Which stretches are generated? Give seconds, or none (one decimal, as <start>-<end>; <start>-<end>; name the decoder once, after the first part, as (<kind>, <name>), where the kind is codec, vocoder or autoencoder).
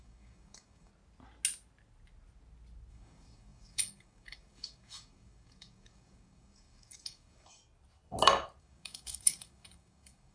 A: 0.0-0.9 (codec, DAC); 2.9-7.6; 8.6-10.3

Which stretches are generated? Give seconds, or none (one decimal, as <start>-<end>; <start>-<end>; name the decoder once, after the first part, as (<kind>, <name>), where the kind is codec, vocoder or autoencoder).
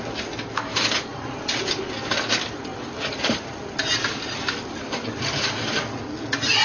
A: 1.1-1.9 (vocoder, BigVGAN v2); 2.7-5.4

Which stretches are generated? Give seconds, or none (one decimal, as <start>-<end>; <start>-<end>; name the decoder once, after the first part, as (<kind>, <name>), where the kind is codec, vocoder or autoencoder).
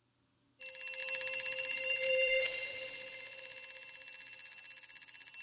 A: 1.0-2.7 (vocoder, BigVGAN v2)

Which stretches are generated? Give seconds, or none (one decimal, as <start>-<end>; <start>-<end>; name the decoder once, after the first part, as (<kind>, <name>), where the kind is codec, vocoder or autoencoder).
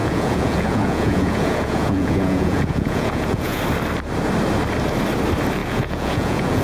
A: 0.0-3.6 (vocoder, Vocos); 5.6-6.6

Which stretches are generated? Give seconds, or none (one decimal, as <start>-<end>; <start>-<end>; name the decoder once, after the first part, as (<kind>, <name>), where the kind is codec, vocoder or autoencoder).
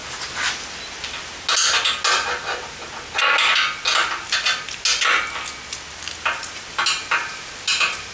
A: none